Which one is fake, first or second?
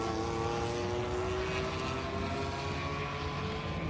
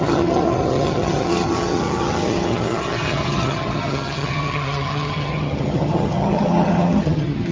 second